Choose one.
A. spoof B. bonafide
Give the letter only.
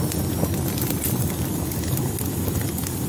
B